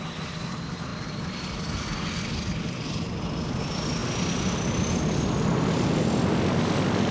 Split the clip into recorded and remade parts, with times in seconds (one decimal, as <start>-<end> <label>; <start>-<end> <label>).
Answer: 0.0-4.0 remade; 4.0-5.0 recorded; 5.0-7.1 remade